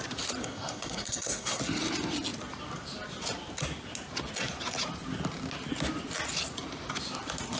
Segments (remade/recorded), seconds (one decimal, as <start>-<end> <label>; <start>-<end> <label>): 0.0-0.4 recorded; 0.4-1.6 remade; 1.6-7.6 recorded